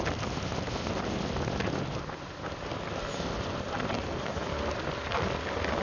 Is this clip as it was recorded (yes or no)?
yes